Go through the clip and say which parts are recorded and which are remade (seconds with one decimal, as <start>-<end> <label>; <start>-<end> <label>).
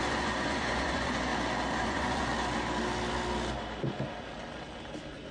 0.0-1.3 remade; 1.3-1.8 recorded; 1.8-2.3 remade; 2.3-5.3 recorded